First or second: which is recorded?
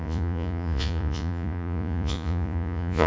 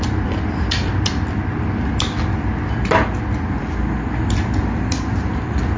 second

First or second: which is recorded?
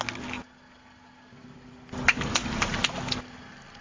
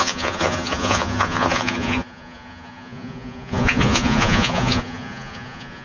first